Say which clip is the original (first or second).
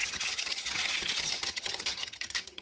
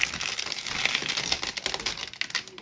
second